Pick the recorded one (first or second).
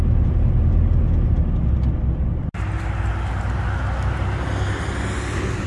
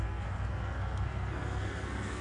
first